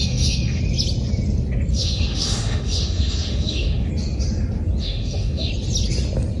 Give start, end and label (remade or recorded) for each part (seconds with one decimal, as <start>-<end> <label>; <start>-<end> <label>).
0.0-0.6 remade; 0.6-1.7 recorded; 1.7-3.9 remade; 3.9-4.8 recorded; 4.8-5.5 remade; 5.5-6.4 recorded